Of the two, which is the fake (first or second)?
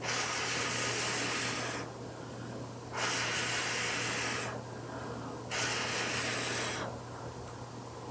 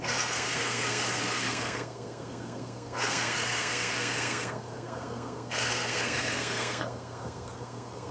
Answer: second